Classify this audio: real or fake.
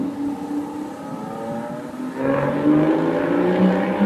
real